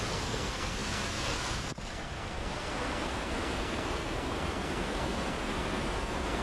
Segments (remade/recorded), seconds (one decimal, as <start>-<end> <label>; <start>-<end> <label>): 0.0-6.4 remade